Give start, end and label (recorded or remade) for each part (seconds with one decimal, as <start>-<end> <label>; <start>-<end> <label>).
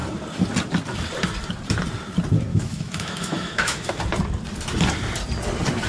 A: 0.0-2.5 recorded; 2.5-4.0 remade; 4.0-5.9 recorded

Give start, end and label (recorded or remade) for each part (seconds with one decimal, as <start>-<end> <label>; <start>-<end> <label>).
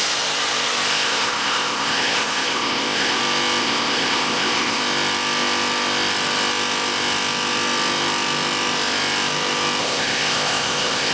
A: 0.0-0.9 recorded; 0.9-3.2 remade; 3.2-3.6 recorded; 3.6-4.8 remade; 4.8-9.8 recorded; 9.8-11.1 remade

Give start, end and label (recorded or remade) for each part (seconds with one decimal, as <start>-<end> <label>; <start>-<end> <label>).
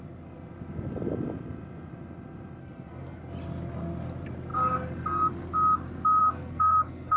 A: 0.0-2.6 recorded; 2.6-3.2 remade; 3.2-6.2 recorded; 6.2-7.2 remade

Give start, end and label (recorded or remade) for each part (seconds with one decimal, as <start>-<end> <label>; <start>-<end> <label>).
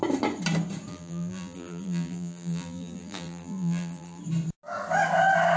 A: 0.0-0.9 recorded; 0.9-4.2 remade; 4.2-5.6 recorded